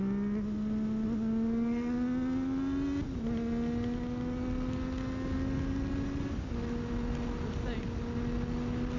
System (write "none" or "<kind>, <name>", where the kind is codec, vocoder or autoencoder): none